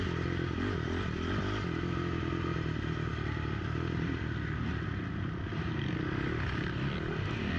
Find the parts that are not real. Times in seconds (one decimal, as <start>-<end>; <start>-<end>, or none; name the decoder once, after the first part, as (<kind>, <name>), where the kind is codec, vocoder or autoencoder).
none